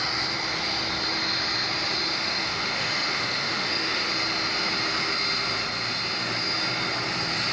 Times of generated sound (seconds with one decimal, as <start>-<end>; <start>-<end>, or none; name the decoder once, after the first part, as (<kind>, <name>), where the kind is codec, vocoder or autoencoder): 2.1-4.1 (autoencoder, DAC-VAE)